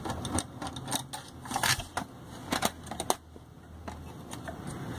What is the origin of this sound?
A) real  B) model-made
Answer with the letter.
A